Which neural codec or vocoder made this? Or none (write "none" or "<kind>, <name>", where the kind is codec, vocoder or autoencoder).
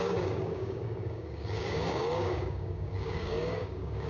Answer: codec, DAC